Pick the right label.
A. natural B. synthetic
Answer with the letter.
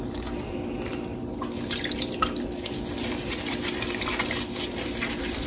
A